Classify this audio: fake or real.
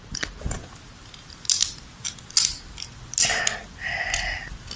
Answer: real